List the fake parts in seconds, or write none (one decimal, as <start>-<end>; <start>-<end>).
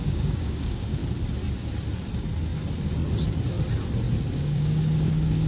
0.0-1.0; 4.3-5.5